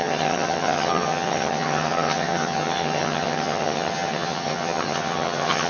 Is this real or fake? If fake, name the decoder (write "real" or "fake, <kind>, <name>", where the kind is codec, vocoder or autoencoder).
fake, vocoder, HiFi-GAN